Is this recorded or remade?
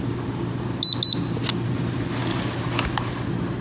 recorded